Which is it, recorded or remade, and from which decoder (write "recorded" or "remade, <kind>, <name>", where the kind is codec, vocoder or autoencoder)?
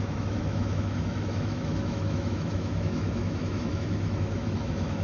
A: remade, autoencoder, DAC-VAE